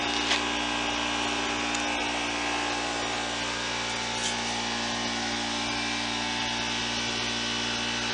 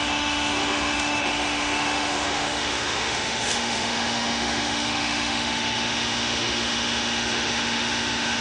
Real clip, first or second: first